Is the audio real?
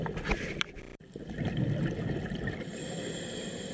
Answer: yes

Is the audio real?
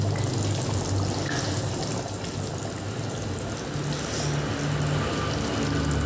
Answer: yes